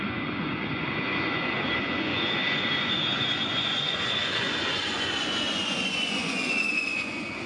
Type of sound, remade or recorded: remade